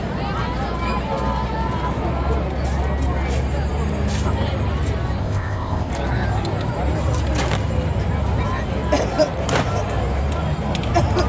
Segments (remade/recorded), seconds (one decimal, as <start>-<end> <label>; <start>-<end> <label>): 0.0-5.2 recorded; 5.2-5.9 remade; 5.9-11.3 recorded